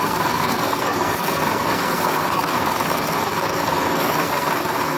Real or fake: fake